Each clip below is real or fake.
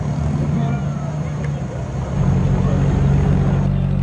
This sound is real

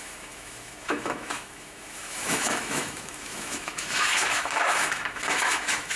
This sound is fake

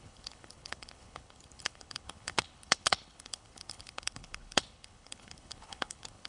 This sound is fake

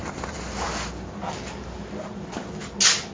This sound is real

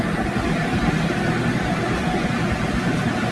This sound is real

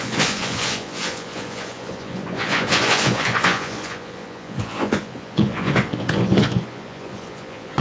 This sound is fake